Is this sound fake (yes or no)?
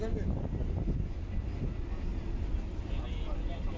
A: no